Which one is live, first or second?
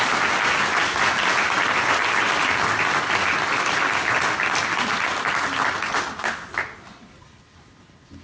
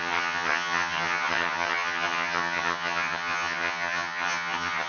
first